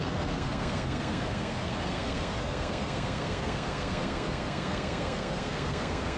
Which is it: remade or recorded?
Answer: remade